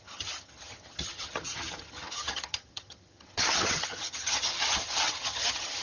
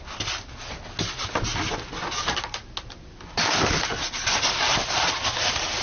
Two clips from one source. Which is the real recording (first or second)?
second